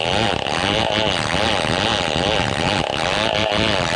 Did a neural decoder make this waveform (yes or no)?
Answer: no